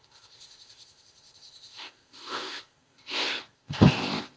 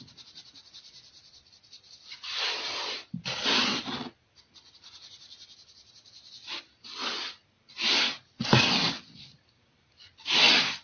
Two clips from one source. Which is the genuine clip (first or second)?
second